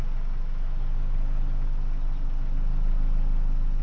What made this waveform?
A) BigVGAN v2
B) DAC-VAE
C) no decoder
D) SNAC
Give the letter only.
C